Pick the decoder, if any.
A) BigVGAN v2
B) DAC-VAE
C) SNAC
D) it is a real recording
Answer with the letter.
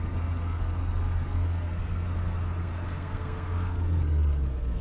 C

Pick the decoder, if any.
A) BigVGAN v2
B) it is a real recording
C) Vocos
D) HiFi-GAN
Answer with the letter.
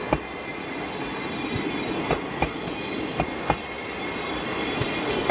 B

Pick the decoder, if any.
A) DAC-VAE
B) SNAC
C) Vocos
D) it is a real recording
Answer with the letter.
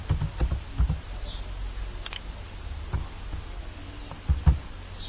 D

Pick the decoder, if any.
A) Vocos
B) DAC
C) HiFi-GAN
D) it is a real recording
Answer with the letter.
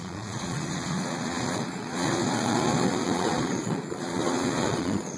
A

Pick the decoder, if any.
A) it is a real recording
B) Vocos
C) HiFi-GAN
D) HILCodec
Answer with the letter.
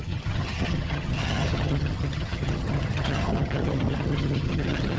C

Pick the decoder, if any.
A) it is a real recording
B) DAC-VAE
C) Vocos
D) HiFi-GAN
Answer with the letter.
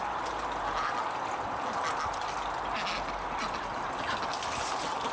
A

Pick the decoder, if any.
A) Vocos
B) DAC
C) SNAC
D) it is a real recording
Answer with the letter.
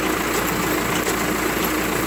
D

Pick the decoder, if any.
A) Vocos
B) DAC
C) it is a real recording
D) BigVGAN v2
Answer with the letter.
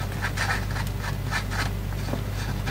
C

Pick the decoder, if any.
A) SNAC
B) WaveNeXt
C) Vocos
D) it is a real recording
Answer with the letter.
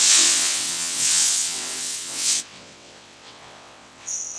B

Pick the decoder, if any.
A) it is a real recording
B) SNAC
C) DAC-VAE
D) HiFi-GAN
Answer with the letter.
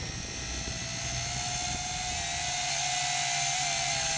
A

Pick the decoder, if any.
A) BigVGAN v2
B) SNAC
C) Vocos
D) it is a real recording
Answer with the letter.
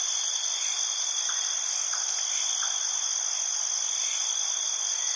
D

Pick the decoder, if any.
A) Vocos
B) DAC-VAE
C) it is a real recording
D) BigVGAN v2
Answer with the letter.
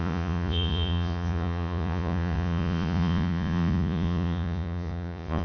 A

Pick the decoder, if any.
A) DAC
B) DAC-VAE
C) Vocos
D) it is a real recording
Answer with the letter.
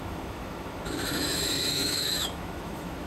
B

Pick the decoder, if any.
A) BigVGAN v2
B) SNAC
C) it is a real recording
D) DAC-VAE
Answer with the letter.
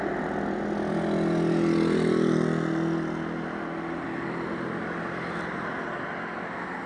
C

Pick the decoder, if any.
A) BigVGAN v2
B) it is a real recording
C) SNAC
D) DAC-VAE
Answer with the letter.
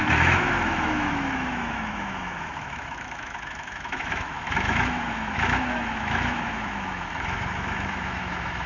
D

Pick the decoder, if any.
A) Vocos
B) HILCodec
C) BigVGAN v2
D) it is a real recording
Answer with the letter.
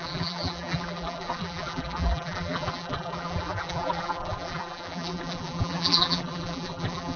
C